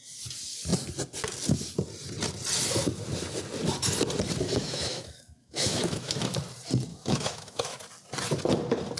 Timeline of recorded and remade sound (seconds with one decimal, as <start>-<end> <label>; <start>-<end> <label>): 0.0-4.6 recorded; 4.6-6.1 remade; 6.1-6.9 recorded; 6.9-7.8 remade; 7.8-9.0 recorded